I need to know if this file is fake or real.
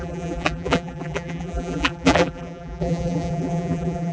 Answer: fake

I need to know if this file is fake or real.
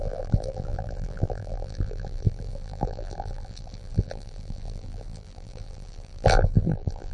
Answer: fake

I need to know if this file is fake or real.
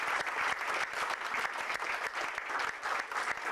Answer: real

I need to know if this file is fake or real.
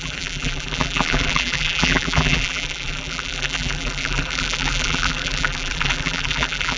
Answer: fake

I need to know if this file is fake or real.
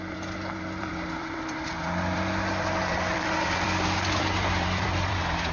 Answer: fake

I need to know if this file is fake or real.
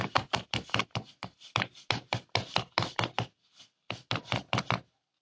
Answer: real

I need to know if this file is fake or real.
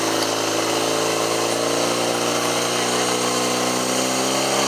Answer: real